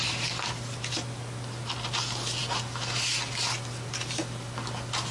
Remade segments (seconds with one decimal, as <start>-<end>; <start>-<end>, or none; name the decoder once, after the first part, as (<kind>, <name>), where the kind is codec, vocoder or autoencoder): none